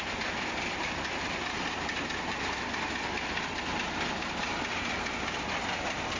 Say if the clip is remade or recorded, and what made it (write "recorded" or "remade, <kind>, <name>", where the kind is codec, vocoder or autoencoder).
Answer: recorded